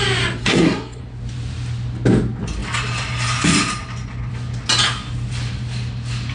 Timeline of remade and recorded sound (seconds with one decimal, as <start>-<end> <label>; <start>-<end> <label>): 0.0-0.4 recorded; 0.4-1.0 remade; 1.0-6.3 recorded